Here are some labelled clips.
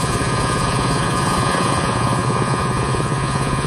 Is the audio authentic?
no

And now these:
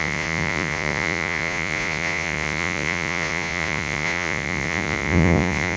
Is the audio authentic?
no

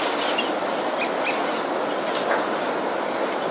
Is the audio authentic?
yes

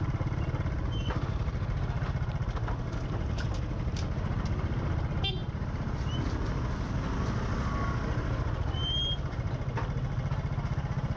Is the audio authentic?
yes